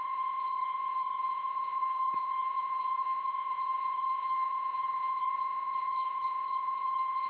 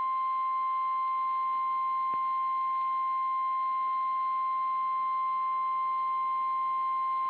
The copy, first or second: first